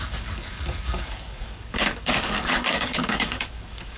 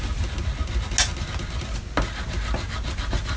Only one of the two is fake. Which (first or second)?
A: first